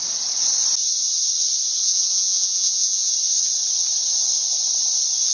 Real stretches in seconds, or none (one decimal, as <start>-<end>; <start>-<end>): 0.0-1.8; 3.1-5.3